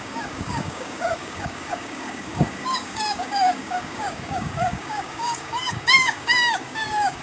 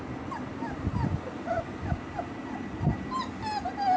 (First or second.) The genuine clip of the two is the second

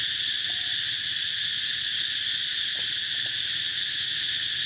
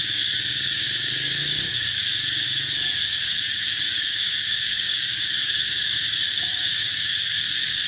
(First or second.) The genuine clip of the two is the first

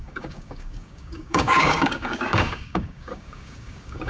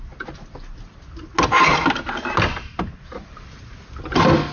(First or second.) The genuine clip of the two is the second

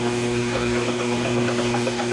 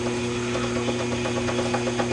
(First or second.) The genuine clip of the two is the second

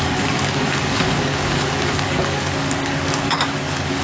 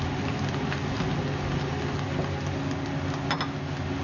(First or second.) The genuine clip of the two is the second